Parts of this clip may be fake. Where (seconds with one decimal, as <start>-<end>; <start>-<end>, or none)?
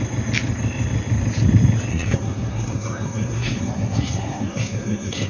1.9-5.3